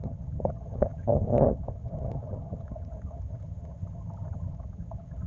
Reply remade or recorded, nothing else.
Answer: remade